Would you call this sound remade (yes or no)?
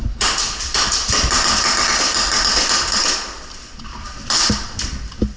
no